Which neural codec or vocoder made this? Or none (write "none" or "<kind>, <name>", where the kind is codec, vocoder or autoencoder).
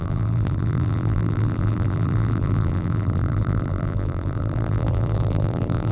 vocoder, BigVGAN v2